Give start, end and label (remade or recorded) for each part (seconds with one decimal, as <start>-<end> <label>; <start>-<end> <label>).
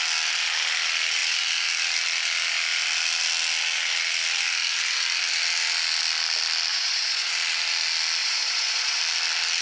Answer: 0.0-6.7 recorded; 6.7-7.3 remade; 7.3-8.2 recorded; 8.2-9.0 remade; 9.0-9.6 recorded